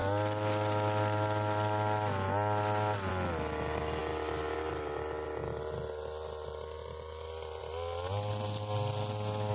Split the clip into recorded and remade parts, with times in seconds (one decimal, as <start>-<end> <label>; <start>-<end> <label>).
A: 0.0-9.5 recorded